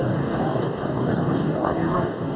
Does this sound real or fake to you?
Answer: fake